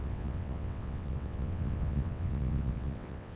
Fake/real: fake